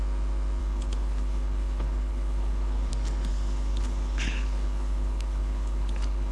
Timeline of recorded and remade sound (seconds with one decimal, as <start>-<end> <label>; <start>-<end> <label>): 0.0-0.6 recorded; 0.6-2.9 remade; 2.9-3.3 recorded; 3.3-6.3 remade